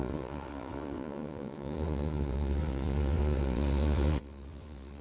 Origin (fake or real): fake